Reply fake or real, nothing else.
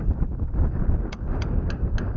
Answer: real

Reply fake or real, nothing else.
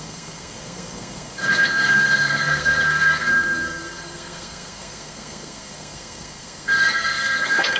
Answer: fake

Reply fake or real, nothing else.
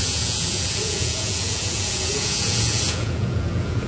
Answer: fake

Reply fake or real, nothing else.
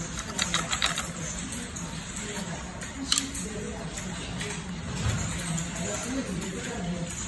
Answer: real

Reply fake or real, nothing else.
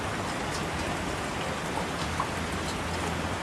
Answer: real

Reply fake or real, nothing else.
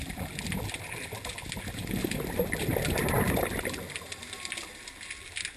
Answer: real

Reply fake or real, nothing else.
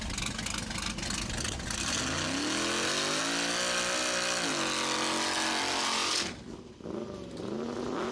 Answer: real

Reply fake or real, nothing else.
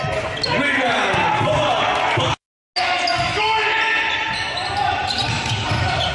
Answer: real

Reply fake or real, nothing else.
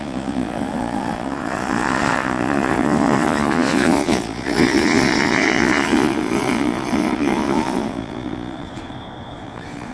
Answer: fake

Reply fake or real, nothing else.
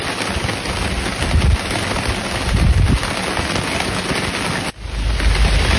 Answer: real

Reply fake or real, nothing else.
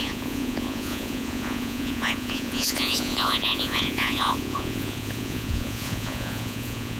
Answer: fake